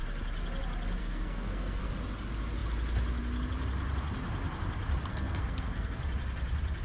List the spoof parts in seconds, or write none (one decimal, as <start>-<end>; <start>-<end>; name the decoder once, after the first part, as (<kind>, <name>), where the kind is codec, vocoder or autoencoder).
1.0-1.9 (codec, SNAC); 5.1-6.0